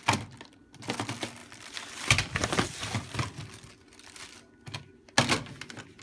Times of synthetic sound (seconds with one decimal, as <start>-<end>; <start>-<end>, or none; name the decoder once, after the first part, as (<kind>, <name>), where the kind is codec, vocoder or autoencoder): none